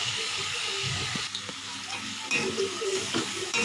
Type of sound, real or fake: fake